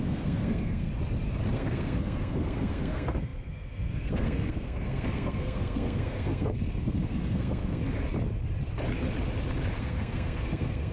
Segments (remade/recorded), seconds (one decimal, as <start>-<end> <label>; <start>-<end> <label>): 0.0-0.9 remade; 0.9-1.5 recorded; 1.5-7.8 remade; 7.8-9.8 recorded; 9.8-10.9 remade